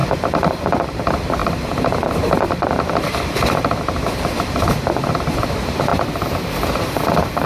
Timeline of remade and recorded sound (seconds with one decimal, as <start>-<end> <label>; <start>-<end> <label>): 0.0-7.5 remade